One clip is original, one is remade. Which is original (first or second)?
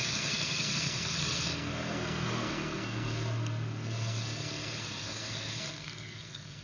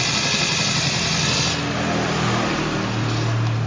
second